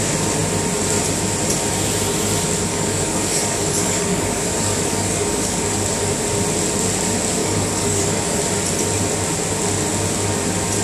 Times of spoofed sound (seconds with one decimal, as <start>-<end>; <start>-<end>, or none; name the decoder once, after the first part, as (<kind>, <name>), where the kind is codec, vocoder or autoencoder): 2.7-5.6 (codec, DAC); 7.4-8.4